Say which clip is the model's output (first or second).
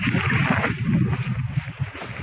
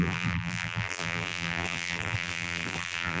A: second